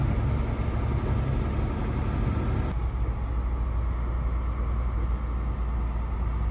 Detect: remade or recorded recorded